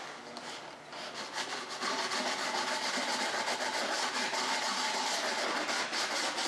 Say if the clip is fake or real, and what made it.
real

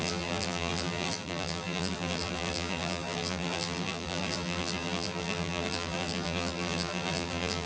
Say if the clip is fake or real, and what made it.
fake, vocoder, BigVGAN v2